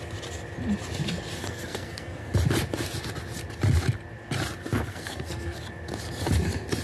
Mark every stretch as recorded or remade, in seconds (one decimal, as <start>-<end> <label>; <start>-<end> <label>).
0.0-1.4 recorded; 1.4-2.3 remade; 2.3-4.6 recorded; 4.6-5.6 remade; 5.6-6.8 recorded